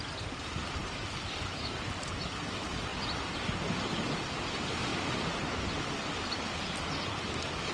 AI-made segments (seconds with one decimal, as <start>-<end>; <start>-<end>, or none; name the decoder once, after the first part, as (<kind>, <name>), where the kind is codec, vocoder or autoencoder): 2.9-3.4 (vocoder, BigVGAN v2); 4.9-6.0